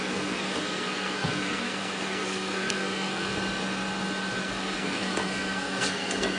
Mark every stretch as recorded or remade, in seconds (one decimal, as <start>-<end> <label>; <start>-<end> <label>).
0.0-3.3 remade; 3.3-4.4 recorded; 4.4-6.4 remade